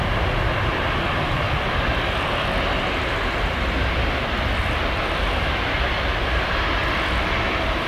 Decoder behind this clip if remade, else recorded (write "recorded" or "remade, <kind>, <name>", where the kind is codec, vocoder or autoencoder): recorded